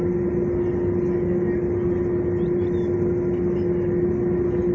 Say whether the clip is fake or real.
real